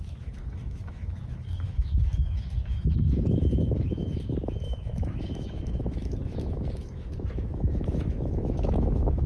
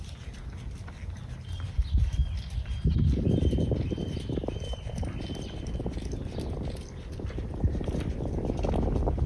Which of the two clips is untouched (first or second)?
second